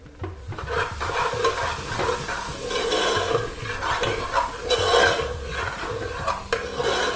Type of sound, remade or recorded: recorded